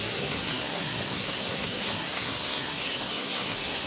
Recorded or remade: remade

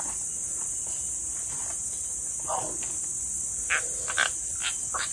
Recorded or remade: recorded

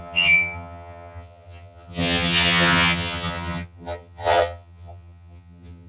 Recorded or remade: remade